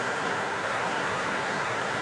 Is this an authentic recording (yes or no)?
no